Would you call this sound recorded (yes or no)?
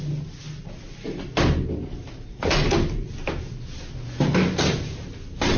yes